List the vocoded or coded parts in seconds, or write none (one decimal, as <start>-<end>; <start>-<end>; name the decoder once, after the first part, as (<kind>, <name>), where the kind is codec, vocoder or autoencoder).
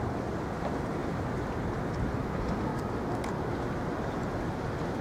none